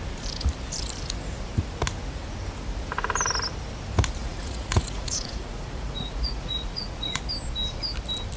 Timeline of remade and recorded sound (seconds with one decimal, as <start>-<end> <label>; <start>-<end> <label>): 0.0-4.2 recorded; 4.2-7.2 remade; 7.2-8.4 recorded